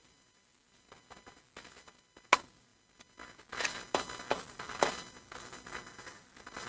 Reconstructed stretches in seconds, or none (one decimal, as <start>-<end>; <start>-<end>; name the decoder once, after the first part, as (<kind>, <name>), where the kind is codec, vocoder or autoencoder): none